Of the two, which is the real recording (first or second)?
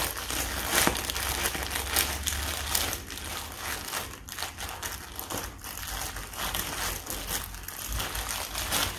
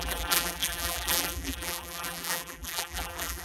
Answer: first